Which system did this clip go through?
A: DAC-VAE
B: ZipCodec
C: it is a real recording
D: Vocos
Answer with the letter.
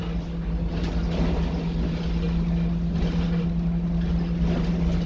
C